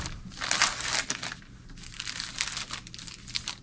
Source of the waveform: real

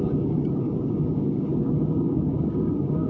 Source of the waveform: fake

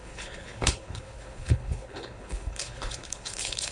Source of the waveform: fake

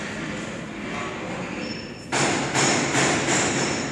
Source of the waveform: real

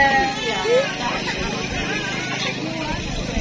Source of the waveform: real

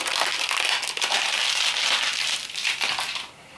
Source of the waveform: real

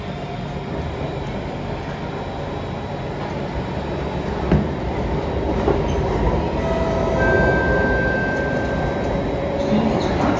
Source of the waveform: real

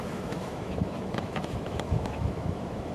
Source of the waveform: fake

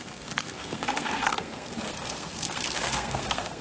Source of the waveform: fake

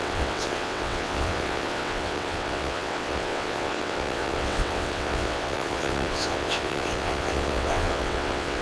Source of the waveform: fake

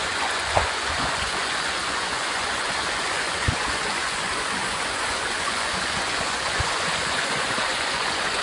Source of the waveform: fake